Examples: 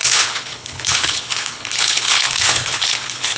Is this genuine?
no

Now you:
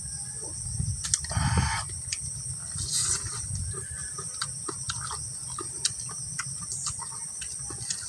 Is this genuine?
yes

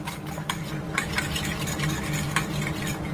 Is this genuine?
yes